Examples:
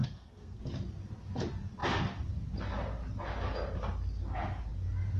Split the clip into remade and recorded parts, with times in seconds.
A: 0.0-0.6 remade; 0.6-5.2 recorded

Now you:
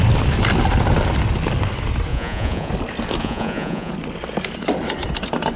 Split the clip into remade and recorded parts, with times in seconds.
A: 0.0-2.1 recorded; 2.1-2.7 remade; 2.7-3.2 recorded; 3.2-3.9 remade; 3.9-5.6 recorded

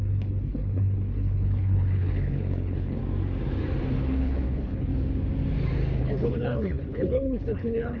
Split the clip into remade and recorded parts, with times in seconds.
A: 0.0-3.0 remade; 3.0-4.0 recorded; 4.0-4.9 remade; 4.9-6.0 recorded; 6.0-8.0 remade

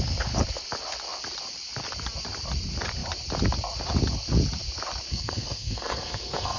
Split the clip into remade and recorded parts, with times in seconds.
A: 0.0-5.1 recorded; 5.1-6.6 remade

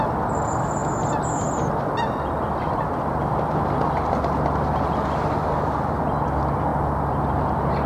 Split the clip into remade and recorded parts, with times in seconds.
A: 0.0-7.9 recorded